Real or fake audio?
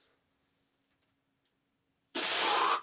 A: fake